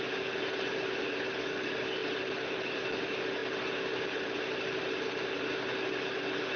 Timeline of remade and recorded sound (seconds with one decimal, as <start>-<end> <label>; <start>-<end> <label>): 0.0-6.6 recorded